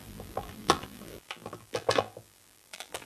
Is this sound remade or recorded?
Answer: remade